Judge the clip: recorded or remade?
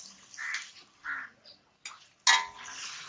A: recorded